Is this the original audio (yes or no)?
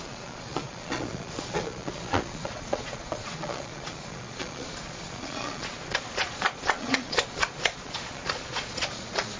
no